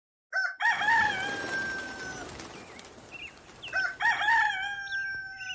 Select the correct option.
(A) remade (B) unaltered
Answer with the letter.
B